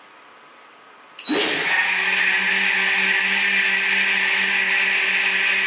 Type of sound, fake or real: real